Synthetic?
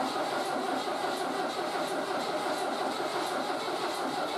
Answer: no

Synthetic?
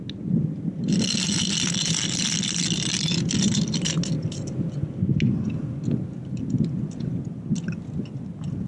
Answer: no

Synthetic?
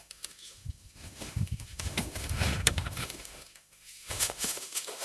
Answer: yes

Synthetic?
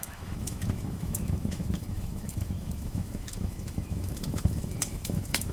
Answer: yes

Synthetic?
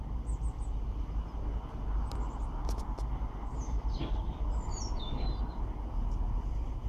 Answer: no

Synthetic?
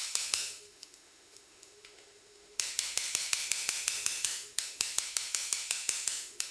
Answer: yes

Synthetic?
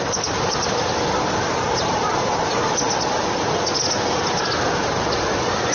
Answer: no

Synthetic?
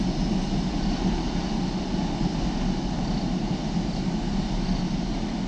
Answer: no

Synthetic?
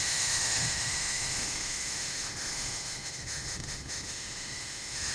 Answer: yes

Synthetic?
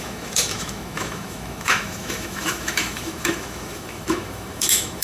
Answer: yes